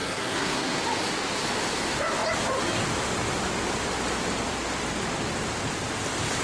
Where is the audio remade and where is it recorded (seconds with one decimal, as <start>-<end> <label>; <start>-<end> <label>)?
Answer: 0.0-0.8 remade; 0.8-6.4 recorded